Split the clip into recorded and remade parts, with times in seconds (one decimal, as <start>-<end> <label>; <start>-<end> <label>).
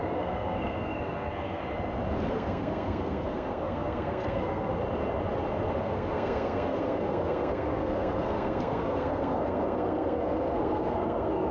0.0-1.6 remade; 1.6-2.3 recorded; 2.3-4.8 remade; 4.8-5.8 recorded; 5.8-11.5 remade